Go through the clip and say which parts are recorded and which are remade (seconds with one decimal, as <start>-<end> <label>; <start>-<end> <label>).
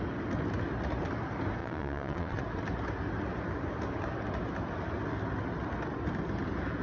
0.0-1.6 recorded; 1.6-2.4 remade; 2.4-6.8 recorded